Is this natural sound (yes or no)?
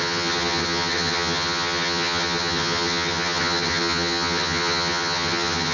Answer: no